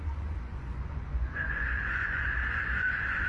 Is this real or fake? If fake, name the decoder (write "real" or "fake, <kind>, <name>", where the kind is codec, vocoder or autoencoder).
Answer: fake, vocoder, Vocos